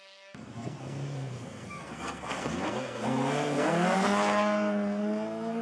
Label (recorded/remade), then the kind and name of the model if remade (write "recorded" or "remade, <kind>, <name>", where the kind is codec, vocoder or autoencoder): remade, codec, SNAC